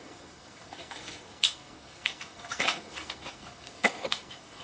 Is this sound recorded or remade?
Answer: remade